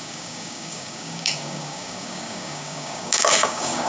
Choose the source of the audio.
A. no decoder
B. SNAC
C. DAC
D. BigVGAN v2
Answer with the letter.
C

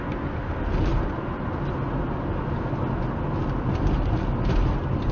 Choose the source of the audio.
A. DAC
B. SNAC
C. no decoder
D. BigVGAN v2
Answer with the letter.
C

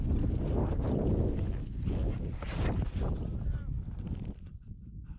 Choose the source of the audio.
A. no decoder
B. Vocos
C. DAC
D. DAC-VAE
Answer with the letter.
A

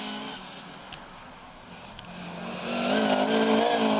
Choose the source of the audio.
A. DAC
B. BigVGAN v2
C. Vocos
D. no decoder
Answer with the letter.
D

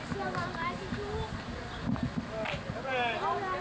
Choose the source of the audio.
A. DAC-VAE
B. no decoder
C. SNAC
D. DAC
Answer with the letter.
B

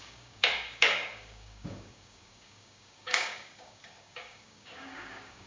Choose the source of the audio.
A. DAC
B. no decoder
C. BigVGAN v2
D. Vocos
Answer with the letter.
A